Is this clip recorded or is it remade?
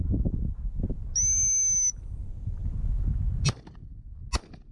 recorded